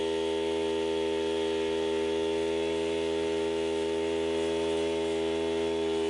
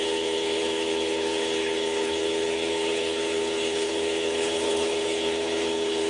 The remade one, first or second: second